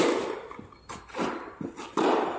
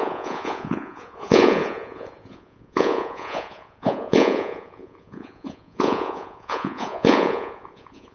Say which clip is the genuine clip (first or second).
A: first